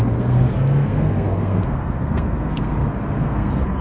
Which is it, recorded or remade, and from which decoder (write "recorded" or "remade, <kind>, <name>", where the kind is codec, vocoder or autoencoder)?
remade, codec, SNAC